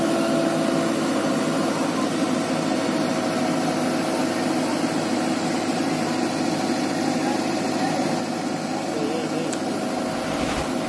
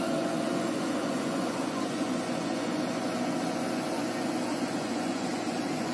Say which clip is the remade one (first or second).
second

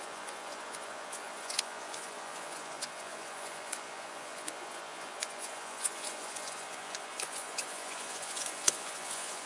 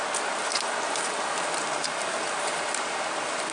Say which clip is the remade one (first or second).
first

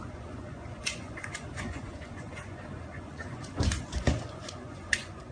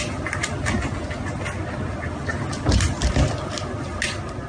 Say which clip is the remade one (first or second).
first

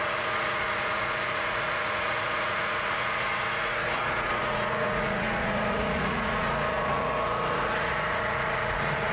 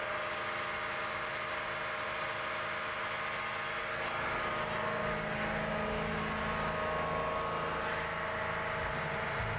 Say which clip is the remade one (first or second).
first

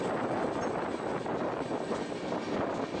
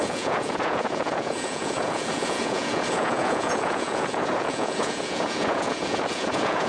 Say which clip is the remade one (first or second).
second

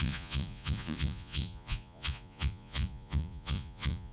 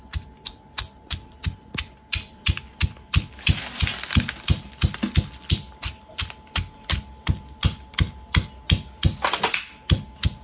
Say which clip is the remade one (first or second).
first